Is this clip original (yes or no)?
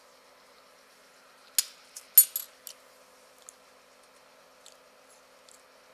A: yes